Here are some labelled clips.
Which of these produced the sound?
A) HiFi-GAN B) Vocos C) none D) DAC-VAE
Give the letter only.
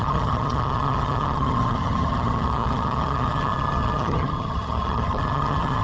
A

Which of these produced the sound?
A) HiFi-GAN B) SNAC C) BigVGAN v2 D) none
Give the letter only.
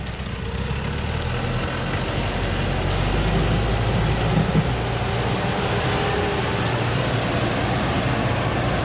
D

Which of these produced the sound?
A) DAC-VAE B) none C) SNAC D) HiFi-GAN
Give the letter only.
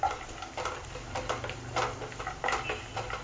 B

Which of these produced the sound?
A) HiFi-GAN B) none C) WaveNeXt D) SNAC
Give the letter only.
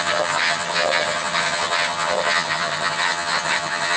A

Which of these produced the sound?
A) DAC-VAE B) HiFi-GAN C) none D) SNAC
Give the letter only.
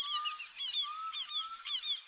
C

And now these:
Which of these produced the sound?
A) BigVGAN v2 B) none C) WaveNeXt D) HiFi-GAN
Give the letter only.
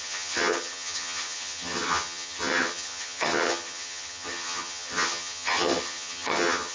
D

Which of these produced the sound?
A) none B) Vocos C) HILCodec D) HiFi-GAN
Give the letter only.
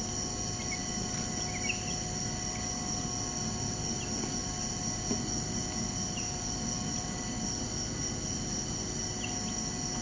A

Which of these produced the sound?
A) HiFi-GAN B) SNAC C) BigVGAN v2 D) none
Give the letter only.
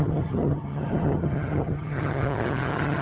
A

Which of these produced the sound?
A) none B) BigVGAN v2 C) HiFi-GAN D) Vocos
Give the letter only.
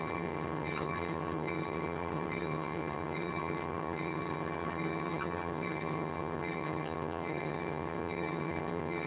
C